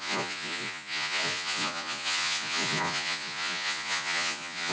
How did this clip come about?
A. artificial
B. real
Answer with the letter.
A